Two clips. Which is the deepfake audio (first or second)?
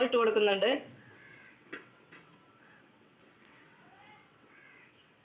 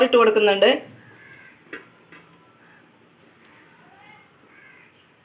first